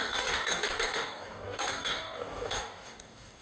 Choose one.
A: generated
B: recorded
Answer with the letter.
A